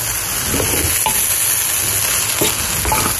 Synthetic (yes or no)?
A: no